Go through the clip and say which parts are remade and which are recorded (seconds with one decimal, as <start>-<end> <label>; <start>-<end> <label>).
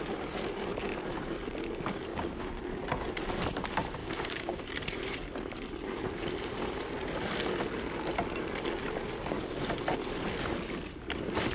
0.0-2.1 recorded; 2.1-2.6 remade; 2.6-4.0 recorded; 4.0-4.6 remade; 4.6-11.5 recorded